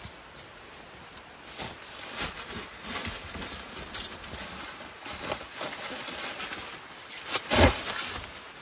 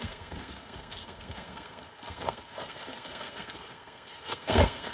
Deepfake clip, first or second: second